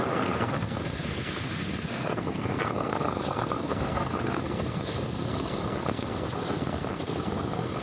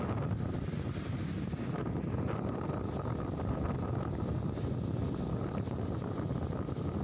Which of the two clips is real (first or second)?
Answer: second